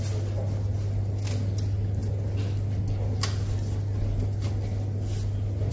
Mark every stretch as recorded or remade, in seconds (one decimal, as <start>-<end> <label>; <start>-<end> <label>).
0.0-5.7 recorded